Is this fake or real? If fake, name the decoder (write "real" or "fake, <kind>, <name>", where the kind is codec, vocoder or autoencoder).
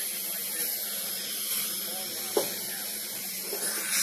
real